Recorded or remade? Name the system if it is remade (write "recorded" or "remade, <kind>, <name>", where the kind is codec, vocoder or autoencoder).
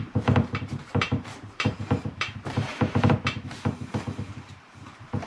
remade, vocoder, BigVGAN v2